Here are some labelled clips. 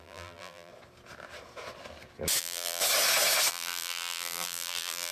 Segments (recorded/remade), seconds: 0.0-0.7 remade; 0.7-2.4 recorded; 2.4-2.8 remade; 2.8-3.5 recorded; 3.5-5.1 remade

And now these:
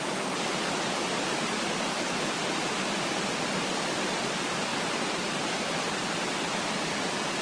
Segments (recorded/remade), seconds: 0.0-7.4 remade

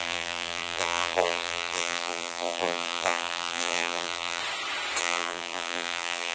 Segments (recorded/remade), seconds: 0.0-4.4 remade; 4.4-5.0 recorded; 5.0-6.3 remade

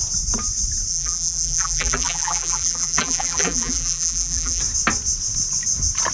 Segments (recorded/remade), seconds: 0.0-0.9 recorded; 0.9-4.6 remade; 4.6-6.1 recorded